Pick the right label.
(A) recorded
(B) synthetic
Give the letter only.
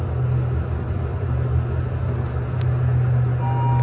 A